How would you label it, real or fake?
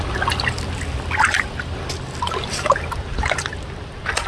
real